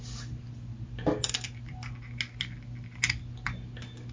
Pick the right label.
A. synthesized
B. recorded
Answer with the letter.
B